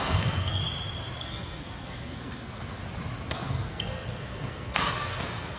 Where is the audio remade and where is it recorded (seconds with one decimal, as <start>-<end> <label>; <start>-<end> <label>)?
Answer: 0.0-0.6 remade; 0.6-1.2 recorded; 1.2-2.8 remade; 2.8-3.3 recorded; 3.3-5.6 remade